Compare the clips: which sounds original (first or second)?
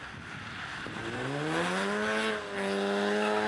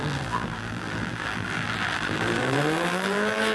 first